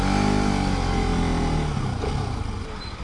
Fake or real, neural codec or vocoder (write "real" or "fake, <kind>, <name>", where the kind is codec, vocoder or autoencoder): real